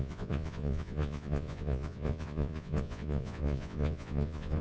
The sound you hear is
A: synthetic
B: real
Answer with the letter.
A